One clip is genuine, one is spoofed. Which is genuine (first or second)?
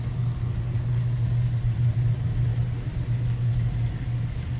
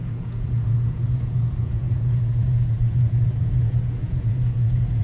first